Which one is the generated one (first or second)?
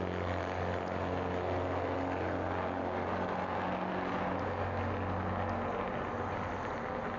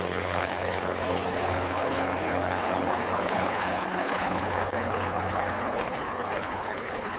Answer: second